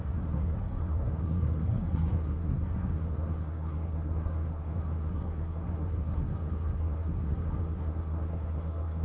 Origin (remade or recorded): remade